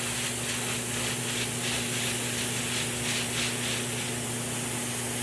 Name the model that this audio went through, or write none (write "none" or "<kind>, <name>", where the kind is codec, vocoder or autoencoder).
none